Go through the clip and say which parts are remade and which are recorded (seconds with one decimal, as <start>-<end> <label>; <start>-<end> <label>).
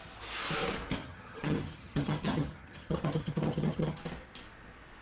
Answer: 0.0-1.0 recorded; 1.0-4.0 remade; 4.0-5.0 recorded